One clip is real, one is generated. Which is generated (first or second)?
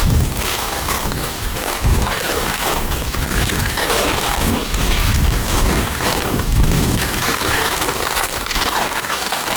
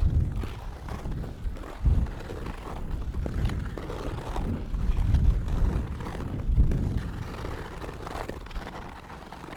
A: first